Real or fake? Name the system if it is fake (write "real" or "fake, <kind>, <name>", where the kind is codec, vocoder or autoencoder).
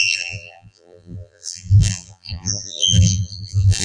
fake, vocoder, BigVGAN v2